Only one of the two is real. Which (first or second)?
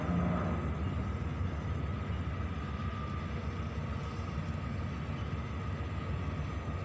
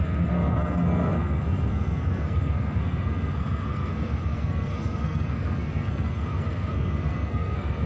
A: first